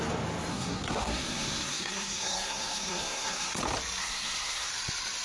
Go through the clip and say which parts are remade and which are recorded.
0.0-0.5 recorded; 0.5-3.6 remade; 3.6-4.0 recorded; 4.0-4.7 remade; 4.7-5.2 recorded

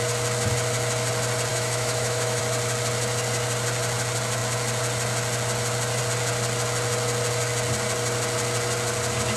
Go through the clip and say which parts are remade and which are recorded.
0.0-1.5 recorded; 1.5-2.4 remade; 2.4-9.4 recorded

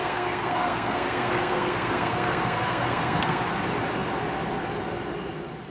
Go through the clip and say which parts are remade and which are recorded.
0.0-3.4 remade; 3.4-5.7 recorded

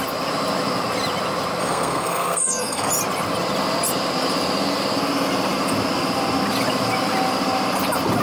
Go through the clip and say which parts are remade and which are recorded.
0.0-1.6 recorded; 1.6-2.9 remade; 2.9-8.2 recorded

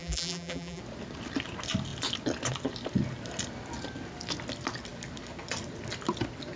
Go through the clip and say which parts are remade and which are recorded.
0.0-0.8 remade; 0.8-6.6 recorded

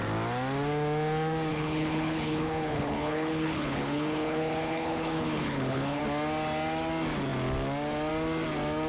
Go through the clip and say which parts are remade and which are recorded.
0.0-1.5 recorded; 1.5-6.0 remade; 6.0-8.9 recorded